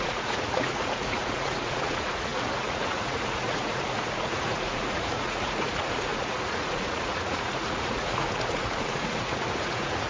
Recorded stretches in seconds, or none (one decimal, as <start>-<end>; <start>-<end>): none